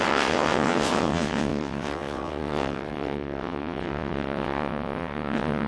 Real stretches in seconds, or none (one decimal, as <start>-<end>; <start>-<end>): none